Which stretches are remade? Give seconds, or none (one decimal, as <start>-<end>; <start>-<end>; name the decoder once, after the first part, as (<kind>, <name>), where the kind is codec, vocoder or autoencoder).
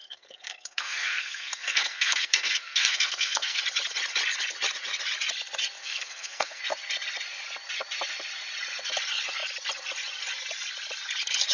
0.0-3.6 (codec, SNAC); 5.8-6.6